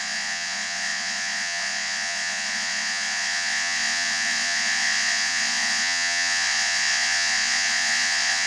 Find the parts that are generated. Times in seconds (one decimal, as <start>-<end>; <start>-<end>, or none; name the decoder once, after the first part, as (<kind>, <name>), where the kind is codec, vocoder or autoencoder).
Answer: 0.0-8.5 (vocoder, Vocos)